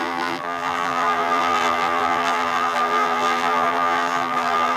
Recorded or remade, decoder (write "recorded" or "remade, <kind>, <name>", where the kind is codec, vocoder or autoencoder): remade, vocoder, BigVGAN v2